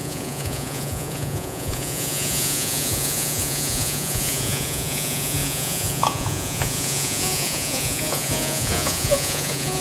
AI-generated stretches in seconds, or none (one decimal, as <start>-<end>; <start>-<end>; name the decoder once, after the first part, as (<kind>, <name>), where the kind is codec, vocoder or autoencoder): 0.0-9.8 (vocoder, Vocos)